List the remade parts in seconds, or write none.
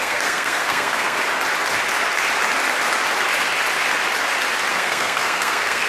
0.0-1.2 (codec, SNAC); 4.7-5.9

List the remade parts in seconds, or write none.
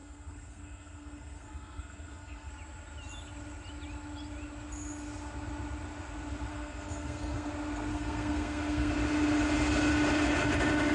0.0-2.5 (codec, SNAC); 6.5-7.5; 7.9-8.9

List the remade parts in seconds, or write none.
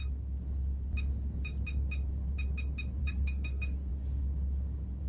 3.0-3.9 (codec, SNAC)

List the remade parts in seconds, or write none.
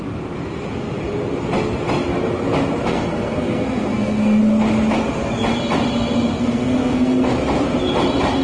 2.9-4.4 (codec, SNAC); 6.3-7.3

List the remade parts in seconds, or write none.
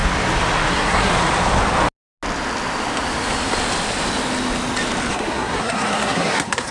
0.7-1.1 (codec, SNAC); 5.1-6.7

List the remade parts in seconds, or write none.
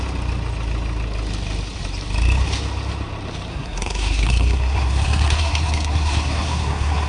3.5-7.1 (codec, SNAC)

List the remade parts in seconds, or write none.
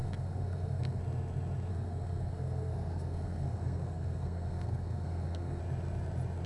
0.0-1.0 (codec, SNAC); 1.7-5.6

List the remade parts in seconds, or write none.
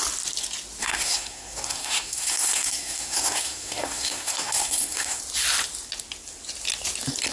0.8-5.2 (codec, SNAC)